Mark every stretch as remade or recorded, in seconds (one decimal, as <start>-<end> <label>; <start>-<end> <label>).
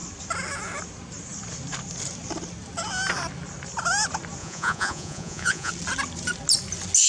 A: 0.0-4.4 recorded; 4.4-5.7 remade; 5.7-7.1 recorded